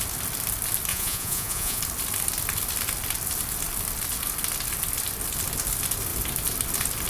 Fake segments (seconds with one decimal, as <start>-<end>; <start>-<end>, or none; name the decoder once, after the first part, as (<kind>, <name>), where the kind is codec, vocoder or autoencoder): 0.9-1.8 (vocoder, Vocos)